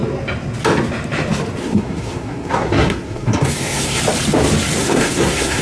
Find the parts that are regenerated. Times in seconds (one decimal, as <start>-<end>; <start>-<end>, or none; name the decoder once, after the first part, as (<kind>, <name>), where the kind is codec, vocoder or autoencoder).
1.6-4.0 (codec, SNAC); 4.8-5.6